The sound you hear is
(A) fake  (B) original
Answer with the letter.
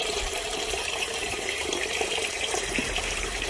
A